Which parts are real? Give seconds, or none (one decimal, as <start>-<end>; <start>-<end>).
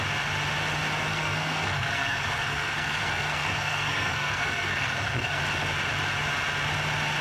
0.0-1.1; 5.4-7.2